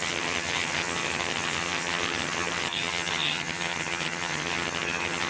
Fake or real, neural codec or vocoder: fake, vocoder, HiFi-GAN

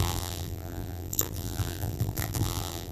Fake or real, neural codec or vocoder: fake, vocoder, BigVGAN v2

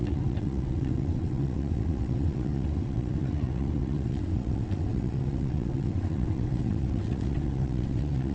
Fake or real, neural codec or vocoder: fake, vocoder, WaveNeXt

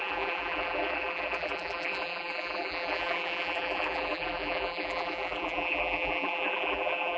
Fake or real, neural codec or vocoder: fake, vocoder, BigVGAN v2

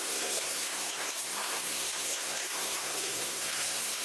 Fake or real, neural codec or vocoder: fake, codec, SNAC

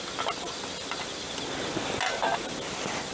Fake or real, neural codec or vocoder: real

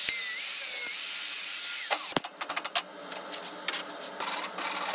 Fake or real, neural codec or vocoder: real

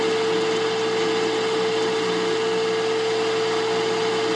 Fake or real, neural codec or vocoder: real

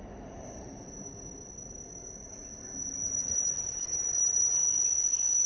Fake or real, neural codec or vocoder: real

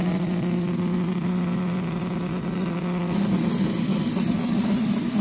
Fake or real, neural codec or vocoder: real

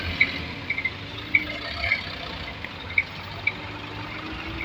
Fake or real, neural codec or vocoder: real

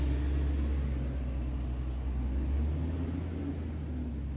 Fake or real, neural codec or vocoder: real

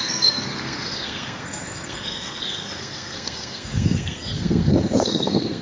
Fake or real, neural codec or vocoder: fake, codec, SNAC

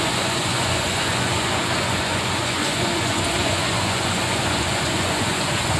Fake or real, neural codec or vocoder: fake, vocoder, Vocos